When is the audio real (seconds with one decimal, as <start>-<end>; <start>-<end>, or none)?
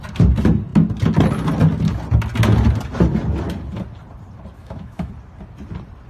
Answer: 0.0-4.6; 5.1-6.1